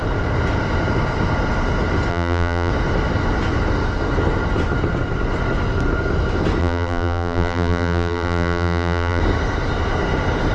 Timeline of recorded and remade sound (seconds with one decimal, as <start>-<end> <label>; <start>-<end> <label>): 0.0-2.1 recorded; 2.1-2.7 remade; 2.7-6.6 recorded; 6.6-9.2 remade; 9.2-10.5 recorded